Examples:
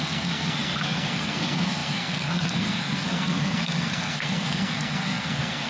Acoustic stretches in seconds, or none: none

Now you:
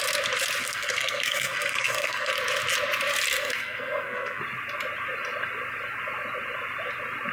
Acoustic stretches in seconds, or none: 0.0-0.6; 2.3-3.3; 4.4-7.3

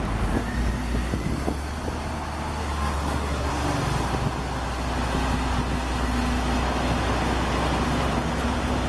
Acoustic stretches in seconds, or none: 0.0-2.6; 3.5-8.9

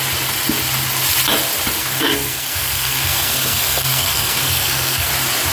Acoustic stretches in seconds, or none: 0.0-1.8; 5.1-5.5

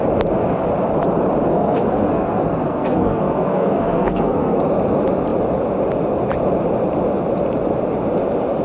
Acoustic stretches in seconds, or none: 0.0-1.5; 4.6-8.6

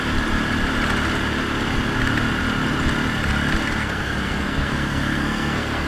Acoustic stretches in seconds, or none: 0.0-3.8

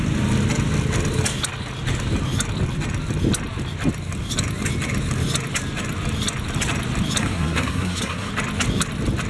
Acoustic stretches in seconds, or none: 0.0-7.2; 8.3-9.3

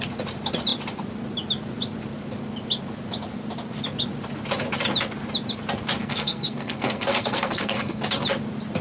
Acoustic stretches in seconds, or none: 0.0-6.0; 8.0-8.8